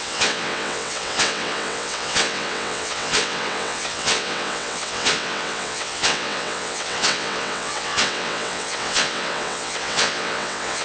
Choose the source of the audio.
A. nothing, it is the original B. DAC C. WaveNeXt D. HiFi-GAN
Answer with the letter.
C